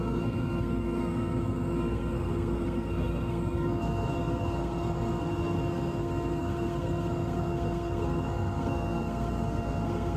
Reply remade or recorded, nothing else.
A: remade